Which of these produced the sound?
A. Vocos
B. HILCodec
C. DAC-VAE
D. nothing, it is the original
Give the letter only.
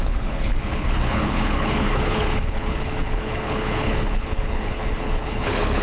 B